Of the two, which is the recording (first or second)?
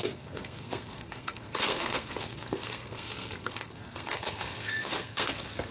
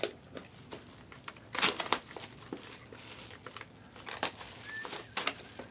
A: second